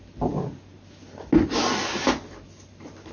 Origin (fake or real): real